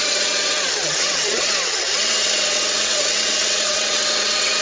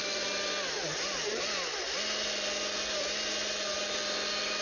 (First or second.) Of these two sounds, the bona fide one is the second